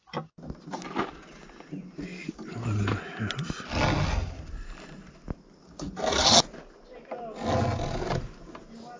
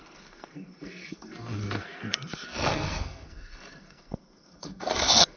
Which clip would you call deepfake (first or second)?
second